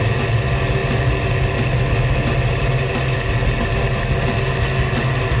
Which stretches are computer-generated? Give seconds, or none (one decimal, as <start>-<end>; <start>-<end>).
none